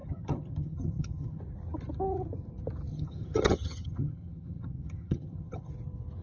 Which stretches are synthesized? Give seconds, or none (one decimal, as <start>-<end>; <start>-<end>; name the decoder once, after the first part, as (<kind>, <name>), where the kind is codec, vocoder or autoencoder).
0.0-1.4 (vocoder, HiFi-GAN); 2.9-5.7